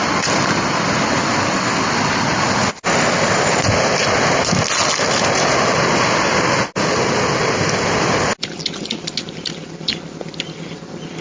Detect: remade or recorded recorded